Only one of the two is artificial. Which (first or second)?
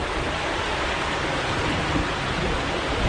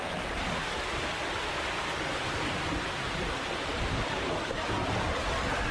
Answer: second